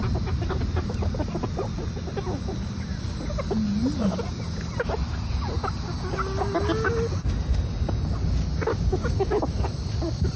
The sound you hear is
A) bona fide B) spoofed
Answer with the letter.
A